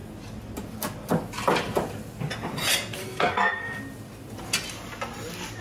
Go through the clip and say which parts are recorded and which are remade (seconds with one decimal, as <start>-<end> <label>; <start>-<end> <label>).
0.0-3.0 recorded; 3.0-3.8 remade; 3.8-5.6 recorded